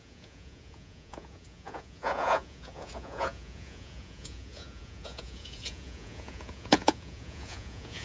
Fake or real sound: fake